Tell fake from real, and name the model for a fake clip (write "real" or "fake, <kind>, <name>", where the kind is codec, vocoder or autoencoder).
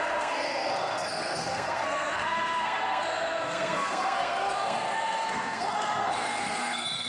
fake, codec, SNAC